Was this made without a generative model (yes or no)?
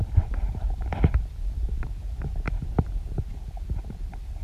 no